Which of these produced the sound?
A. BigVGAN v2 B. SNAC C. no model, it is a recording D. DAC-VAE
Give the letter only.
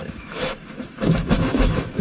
D